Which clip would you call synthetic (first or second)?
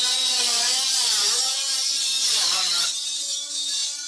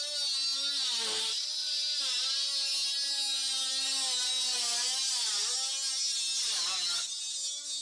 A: first